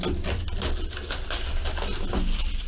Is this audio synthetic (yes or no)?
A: no